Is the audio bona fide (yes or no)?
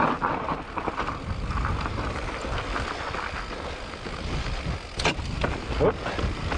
yes